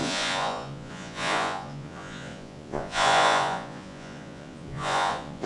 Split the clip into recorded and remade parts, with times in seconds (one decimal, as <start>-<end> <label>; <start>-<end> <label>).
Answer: 0.0-5.5 remade